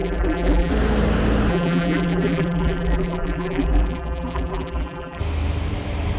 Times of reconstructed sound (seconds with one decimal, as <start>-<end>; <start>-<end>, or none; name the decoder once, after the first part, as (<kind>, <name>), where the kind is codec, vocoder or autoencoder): 0.0-0.7 (vocoder, BigVGAN v2); 1.5-5.2